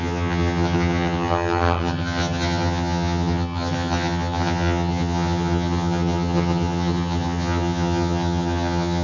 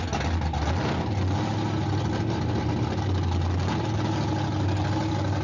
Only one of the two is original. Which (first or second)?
second